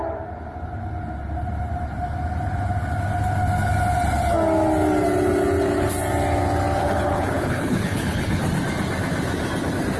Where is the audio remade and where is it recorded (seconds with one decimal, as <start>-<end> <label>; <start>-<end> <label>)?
0.0-6.8 recorded; 6.8-8.4 remade; 8.4-10.0 recorded